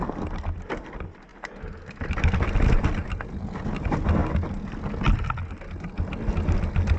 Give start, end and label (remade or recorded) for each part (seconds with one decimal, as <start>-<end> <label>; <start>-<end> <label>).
0.0-7.0 recorded